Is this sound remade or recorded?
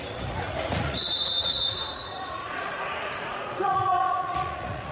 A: remade